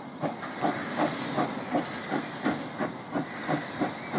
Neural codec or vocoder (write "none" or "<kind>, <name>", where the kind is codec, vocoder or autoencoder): none